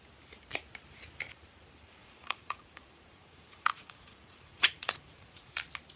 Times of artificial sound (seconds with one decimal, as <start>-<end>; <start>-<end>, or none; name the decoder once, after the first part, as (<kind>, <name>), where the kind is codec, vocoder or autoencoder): 2.0-5.6 (vocoder, Vocos)